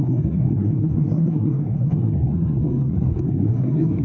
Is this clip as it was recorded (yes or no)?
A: no